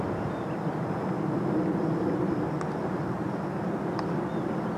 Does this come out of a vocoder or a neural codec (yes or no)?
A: no